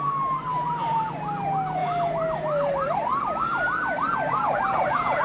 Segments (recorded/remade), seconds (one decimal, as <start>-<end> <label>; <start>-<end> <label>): 0.0-0.5 recorded; 0.5-1.1 remade; 1.1-1.8 recorded; 1.8-5.2 remade